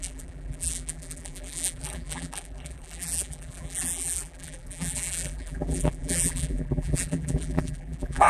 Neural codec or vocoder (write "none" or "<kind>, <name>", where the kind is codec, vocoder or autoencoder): vocoder, BigVGAN v2